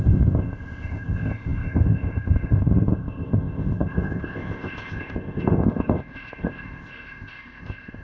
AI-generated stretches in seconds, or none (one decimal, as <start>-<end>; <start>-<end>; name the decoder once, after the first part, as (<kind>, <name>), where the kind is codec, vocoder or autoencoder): 0.0-8.0 (codec, ZipCodec)